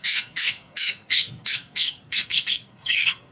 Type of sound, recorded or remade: remade